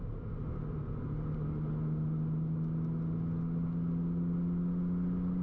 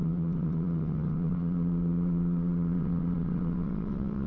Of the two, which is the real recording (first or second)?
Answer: first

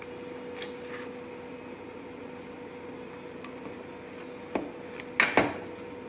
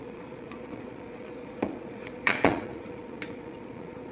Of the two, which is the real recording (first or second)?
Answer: first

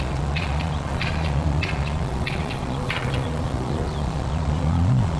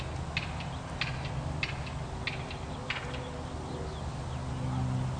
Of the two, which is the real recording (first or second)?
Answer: second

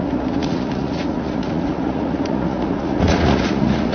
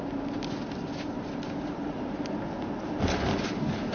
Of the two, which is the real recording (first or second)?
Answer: second